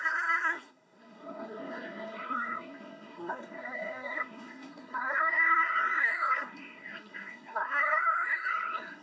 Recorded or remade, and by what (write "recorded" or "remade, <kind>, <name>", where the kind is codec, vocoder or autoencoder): remade, codec, SNAC